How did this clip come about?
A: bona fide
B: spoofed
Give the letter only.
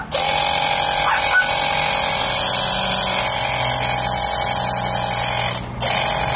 A